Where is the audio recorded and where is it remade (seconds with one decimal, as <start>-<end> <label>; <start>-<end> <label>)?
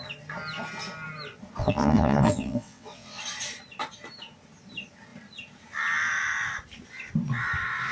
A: 0.0-1.6 recorded; 1.6-3.2 remade; 3.2-7.9 recorded